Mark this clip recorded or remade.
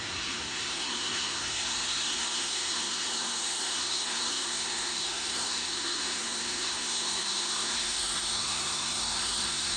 remade